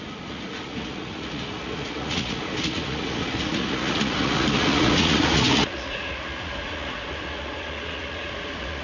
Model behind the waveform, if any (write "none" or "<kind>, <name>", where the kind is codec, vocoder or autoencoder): vocoder, Vocos